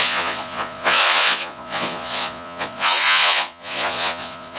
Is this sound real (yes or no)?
no